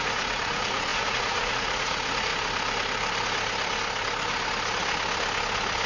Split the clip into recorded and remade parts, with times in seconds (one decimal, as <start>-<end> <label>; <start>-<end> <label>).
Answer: 0.0-2.3 remade; 2.3-5.9 recorded